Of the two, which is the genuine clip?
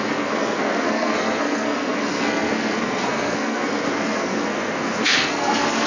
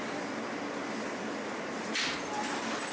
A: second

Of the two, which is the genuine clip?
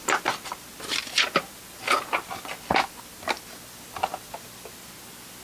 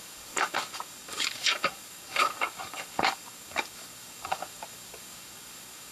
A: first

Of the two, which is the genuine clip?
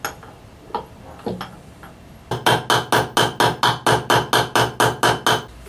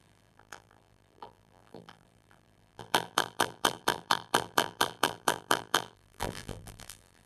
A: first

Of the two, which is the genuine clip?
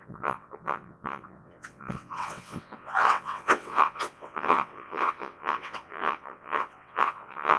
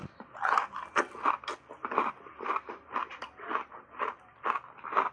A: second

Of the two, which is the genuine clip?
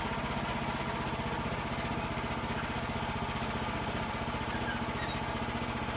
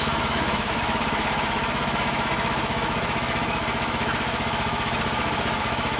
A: first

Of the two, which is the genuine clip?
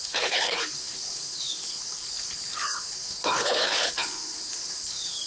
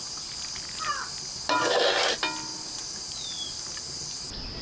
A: second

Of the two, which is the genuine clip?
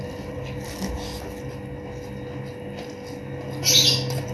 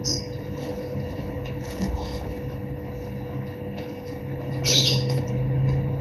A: first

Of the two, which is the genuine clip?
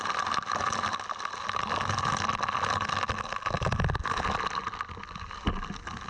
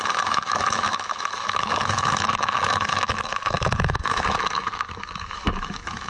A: first